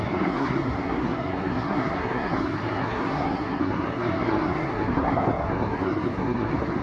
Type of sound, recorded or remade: remade